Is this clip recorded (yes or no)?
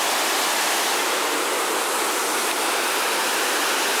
yes